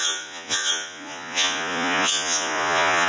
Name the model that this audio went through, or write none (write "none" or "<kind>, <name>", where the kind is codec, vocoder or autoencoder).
vocoder, Vocos